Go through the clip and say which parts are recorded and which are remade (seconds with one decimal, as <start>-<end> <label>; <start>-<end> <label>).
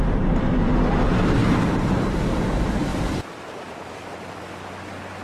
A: 0.0-1.4 recorded; 1.4-2.1 remade; 2.1-5.2 recorded